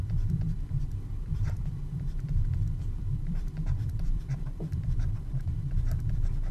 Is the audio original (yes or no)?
no